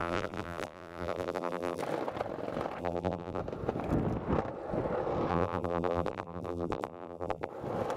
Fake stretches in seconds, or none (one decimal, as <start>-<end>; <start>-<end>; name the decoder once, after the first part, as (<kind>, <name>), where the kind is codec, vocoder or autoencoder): 0.0-1.8 (vocoder, BigVGAN v2); 2.8-3.4; 5.3-7.5